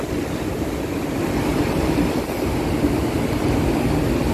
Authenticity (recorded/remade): recorded